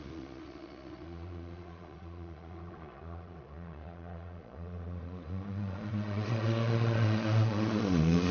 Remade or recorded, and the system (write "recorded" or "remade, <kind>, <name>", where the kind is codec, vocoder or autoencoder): remade, vocoder, Vocos